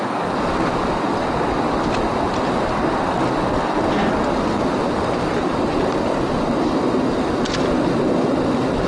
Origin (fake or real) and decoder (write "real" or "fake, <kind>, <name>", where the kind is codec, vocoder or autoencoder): real